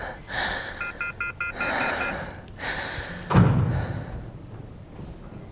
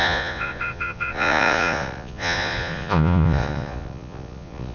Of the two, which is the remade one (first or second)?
second